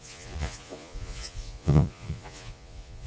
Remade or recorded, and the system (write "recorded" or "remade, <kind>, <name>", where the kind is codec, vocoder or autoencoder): remade, vocoder, Vocos